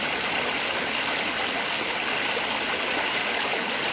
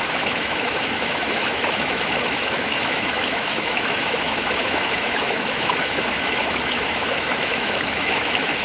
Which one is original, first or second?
first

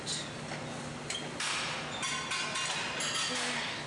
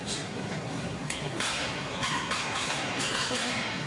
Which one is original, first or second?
first